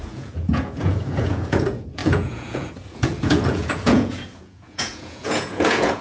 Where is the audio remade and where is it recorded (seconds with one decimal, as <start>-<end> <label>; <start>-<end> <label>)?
0.0-6.0 remade